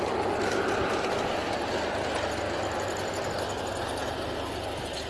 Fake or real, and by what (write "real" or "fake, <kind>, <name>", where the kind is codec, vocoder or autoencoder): real